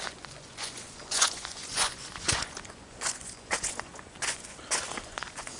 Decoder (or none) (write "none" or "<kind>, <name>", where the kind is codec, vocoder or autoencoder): vocoder, Vocos